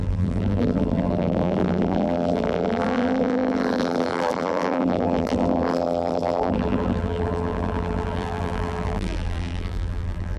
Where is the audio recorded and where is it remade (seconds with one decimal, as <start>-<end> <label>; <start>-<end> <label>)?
0.0-10.4 remade